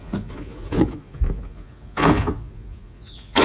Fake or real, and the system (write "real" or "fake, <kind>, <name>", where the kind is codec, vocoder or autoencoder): fake, vocoder, Vocos